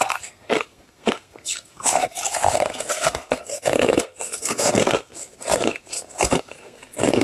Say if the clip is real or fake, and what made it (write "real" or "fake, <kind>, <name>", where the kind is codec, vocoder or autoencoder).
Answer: fake, codec, SNAC